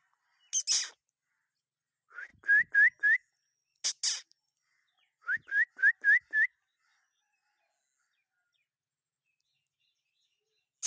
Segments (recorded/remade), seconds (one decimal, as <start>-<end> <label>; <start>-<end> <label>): 0.0-10.9 recorded